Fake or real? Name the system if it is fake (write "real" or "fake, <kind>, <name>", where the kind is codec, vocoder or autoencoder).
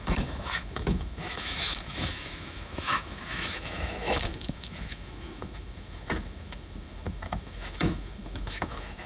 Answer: fake, autoencoder, DAC-VAE